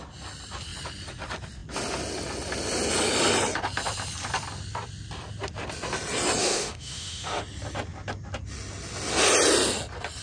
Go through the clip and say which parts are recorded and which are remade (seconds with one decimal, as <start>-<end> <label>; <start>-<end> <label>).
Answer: 0.0-6.4 recorded; 6.4-7.4 remade; 7.4-10.2 recorded